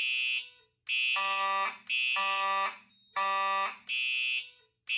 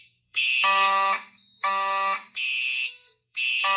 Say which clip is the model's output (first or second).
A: second